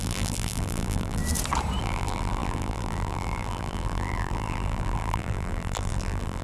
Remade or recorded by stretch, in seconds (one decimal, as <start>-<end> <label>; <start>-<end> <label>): 0.0-1.2 remade; 1.2-1.8 recorded; 1.8-6.4 remade